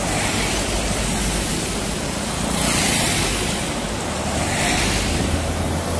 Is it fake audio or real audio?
real